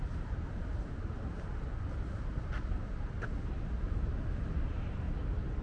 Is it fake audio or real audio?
real